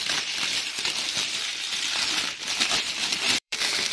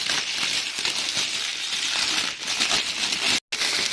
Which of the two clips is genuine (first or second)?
second